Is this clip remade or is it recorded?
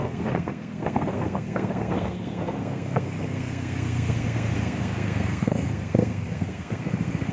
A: remade